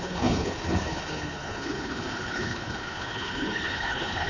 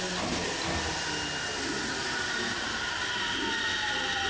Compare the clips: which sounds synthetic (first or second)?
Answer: first